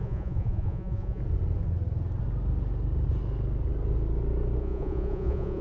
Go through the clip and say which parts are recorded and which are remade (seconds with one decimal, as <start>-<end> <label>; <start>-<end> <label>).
0.0-1.2 remade; 1.2-4.6 recorded; 4.6-5.6 remade